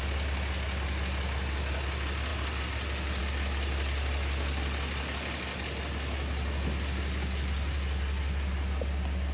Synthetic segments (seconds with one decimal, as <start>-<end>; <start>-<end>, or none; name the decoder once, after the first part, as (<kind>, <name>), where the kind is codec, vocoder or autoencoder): none